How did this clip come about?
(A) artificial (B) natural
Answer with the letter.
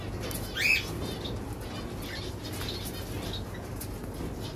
B